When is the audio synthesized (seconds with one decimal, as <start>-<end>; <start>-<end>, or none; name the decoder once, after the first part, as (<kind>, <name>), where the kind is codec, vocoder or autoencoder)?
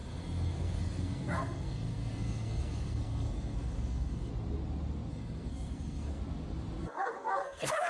0.0-4.3 (codec, SNAC); 5.1-6.2; 6.8-7.9